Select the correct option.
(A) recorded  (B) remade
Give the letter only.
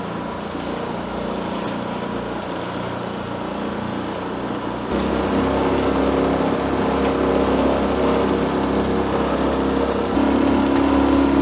A